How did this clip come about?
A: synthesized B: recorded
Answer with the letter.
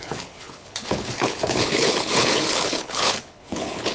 A